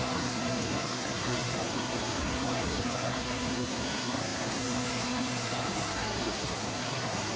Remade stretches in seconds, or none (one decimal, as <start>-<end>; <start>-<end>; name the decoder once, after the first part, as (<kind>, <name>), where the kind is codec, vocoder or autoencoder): 0.0-7.4 (codec, SNAC)